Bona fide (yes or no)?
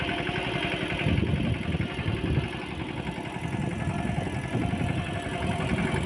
yes